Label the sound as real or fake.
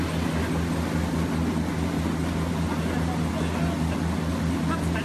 real